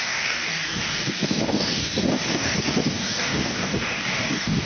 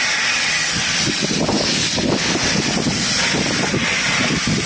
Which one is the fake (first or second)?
first